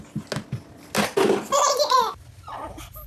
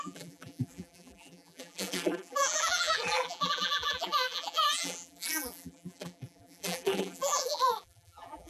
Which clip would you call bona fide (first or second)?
first